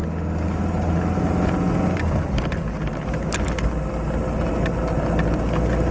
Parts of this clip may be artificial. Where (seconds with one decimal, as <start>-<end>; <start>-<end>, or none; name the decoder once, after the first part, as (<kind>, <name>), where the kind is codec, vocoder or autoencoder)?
none